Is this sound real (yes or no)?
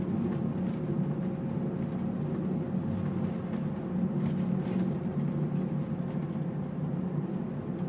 yes